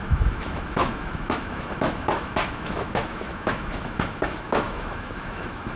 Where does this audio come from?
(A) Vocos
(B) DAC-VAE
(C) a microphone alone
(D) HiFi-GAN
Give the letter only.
B